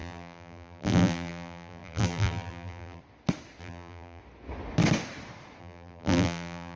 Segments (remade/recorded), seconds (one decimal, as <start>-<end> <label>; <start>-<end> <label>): 0.0-3.0 remade; 3.0-3.6 recorded; 3.6-4.2 remade; 4.2-5.6 recorded; 5.6-6.8 remade